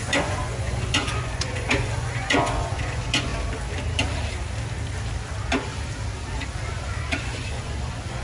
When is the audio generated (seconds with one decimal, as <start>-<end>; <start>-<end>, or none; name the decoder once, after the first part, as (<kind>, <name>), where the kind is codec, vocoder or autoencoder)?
0.0-3.3 (vocoder, Vocos); 6.7-8.2